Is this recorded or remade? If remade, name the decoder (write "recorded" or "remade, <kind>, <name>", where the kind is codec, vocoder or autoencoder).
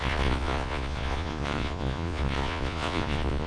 remade, vocoder, Vocos